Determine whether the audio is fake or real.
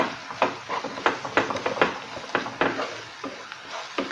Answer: real